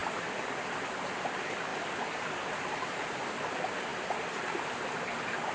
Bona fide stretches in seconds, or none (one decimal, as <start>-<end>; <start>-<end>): 0.0-5.5